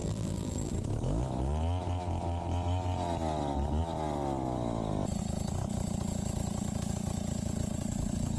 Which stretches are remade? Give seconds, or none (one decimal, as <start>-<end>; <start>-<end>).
0.0-0.7